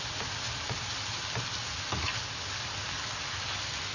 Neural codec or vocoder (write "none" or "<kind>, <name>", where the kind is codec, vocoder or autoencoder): none